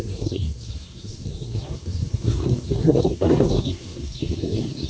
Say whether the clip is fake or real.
fake